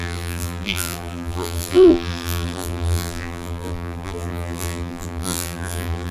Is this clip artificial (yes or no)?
yes